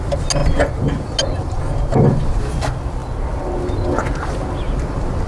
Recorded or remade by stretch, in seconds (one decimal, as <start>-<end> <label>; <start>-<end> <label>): 0.0-5.3 recorded